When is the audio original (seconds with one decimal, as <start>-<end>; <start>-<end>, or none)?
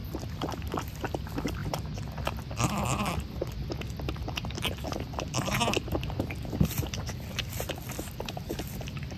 0.8-9.2